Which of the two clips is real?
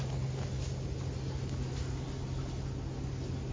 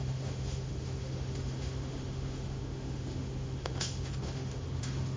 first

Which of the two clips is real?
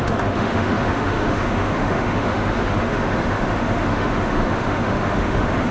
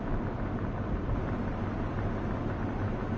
second